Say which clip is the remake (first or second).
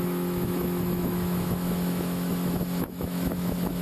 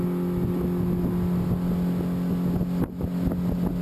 first